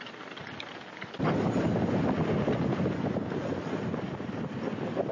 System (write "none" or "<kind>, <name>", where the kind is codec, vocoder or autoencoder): none